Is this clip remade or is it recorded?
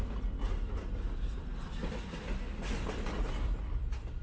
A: recorded